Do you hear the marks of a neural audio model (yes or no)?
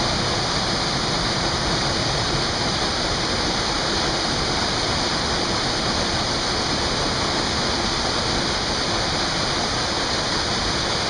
no